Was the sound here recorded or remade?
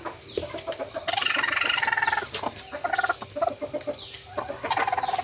recorded